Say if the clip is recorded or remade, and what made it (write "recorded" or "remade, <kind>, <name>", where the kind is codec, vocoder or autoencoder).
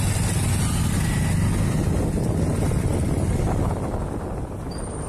recorded